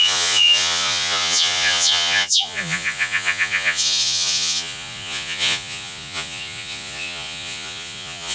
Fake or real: fake